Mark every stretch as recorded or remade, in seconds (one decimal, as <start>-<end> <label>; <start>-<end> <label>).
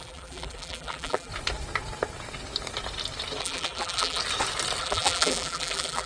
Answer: 0.0-1.3 remade; 1.3-3.4 recorded; 3.4-4.2 remade; 4.2-4.8 recorded; 4.8-6.1 remade